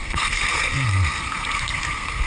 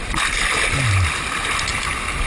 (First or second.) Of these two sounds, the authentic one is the second